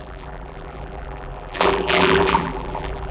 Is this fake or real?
fake